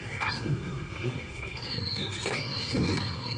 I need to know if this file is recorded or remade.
remade